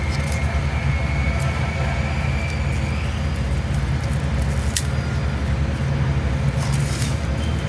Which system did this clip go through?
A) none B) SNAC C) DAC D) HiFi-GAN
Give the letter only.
A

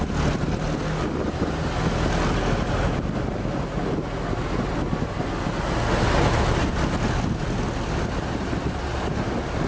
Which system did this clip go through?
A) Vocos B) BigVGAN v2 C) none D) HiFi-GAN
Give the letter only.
C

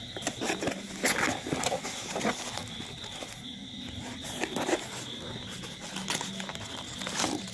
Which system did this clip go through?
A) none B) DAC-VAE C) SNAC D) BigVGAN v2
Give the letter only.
A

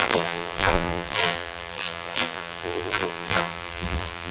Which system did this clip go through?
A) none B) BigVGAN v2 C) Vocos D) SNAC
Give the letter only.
B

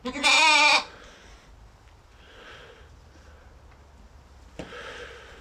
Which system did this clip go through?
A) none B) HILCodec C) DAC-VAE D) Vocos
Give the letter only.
A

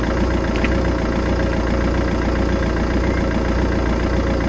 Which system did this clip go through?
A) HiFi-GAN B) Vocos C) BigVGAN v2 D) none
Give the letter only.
D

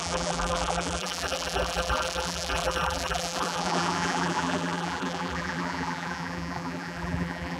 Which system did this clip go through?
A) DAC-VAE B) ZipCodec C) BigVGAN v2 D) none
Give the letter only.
C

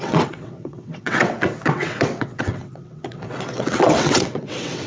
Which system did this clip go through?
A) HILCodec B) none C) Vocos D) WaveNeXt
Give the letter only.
D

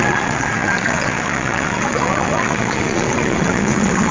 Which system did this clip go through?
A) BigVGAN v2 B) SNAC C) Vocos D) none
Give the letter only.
C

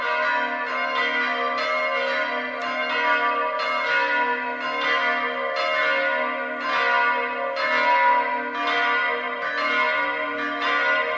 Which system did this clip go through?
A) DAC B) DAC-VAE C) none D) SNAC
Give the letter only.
C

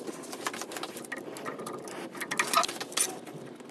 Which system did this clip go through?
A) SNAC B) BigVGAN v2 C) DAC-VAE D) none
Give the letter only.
D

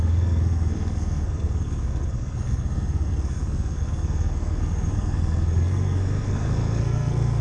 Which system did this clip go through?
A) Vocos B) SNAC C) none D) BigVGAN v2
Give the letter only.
B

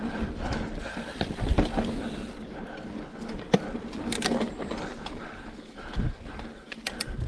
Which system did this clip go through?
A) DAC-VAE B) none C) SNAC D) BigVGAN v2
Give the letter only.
B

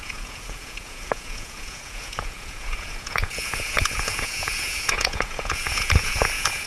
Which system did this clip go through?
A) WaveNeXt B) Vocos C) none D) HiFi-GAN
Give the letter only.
B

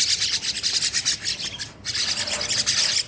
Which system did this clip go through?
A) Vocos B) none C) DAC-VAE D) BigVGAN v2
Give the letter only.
B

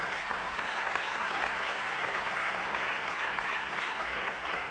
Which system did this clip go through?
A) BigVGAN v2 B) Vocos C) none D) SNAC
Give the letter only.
D